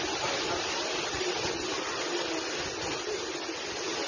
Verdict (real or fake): real